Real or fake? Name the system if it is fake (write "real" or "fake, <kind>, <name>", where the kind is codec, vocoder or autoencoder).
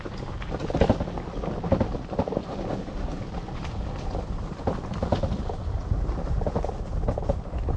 real